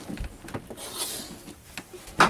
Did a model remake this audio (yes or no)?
no